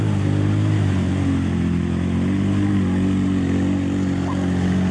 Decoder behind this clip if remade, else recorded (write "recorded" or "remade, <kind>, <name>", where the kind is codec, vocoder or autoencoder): recorded